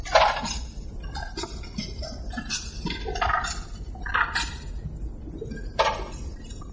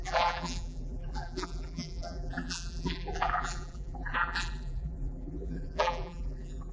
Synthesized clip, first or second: second